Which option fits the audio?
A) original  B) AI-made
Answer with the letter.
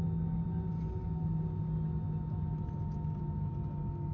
A